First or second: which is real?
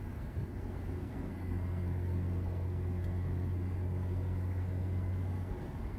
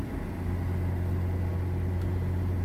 second